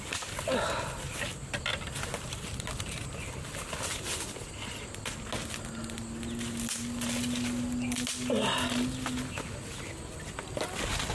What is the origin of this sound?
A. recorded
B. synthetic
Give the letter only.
A